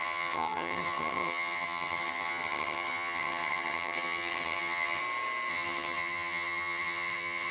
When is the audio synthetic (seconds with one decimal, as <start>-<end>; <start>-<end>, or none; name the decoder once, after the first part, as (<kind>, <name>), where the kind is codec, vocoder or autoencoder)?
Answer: 0.0-5.0 (vocoder, HiFi-GAN); 5.5-7.5